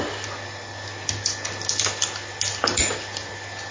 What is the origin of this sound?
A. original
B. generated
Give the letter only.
A